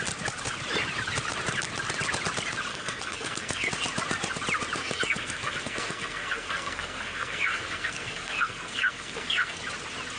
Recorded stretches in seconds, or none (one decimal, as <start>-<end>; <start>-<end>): 0.0-2.7; 3.7-4.8; 9.6-10.2